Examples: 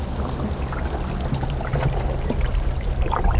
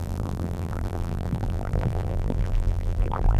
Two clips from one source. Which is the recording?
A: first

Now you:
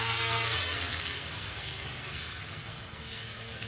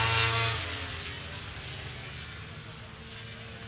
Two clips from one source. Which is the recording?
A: second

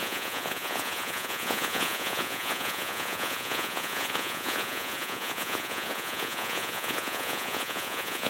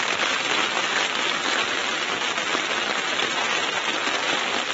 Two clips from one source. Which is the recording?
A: second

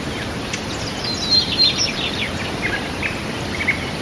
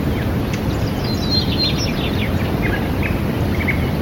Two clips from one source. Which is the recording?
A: second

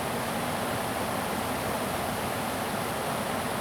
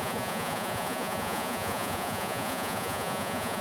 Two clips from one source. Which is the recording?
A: first